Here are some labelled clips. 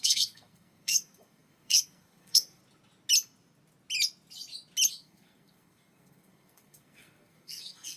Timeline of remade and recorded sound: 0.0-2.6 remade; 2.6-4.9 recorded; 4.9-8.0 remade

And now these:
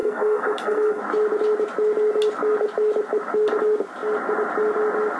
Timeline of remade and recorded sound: 0.0-1.0 remade; 1.0-5.2 recorded

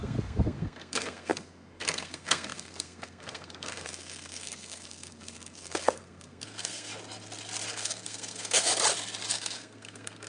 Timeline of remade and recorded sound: 0.0-6.9 remade; 6.9-7.7 recorded; 7.7-8.7 remade; 8.7-9.3 recorded; 9.3-10.3 remade

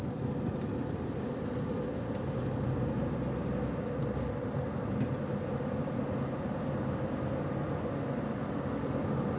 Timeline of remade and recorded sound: 0.0-9.4 recorded

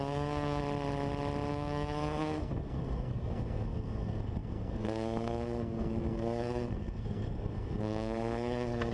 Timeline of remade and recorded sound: 0.0-0.6 remade; 0.6-1.5 recorded; 1.5-8.9 remade